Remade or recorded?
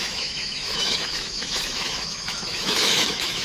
remade